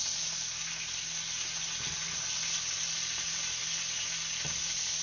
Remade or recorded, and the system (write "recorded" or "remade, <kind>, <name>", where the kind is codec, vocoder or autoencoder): recorded